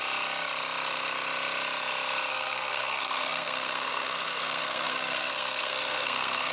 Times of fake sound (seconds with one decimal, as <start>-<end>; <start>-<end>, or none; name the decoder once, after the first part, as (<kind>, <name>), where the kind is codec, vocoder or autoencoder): 2.3-6.5 (codec, SNAC)